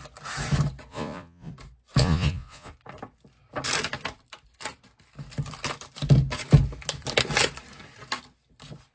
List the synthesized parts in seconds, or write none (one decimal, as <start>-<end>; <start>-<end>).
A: 0.9-1.5; 2.0-2.7